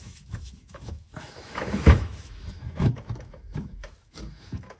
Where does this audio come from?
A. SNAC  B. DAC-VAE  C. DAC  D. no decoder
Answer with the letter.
B